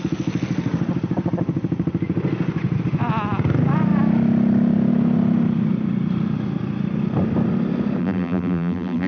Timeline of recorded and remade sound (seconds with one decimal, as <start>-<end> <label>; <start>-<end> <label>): 0.0-8.0 recorded; 8.0-9.1 remade